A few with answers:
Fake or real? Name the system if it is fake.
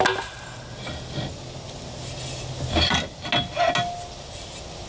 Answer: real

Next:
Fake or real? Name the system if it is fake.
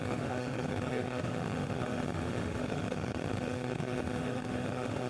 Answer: fake, autoencoder, DAC-VAE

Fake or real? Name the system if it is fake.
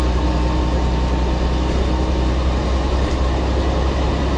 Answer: real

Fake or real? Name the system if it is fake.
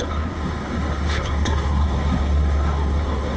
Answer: fake, codec, SNAC